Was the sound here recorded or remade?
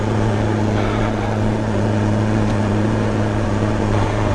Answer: remade